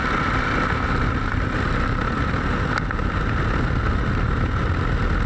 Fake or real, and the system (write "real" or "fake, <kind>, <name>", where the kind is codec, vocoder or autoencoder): real